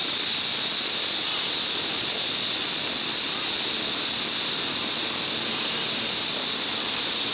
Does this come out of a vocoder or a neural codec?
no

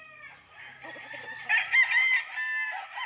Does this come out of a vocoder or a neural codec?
no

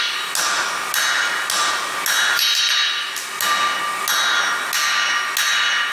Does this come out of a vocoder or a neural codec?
no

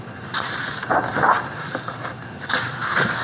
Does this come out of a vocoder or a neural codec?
yes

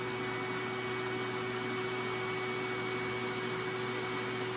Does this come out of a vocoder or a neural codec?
no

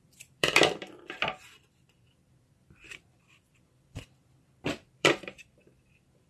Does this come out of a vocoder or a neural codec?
yes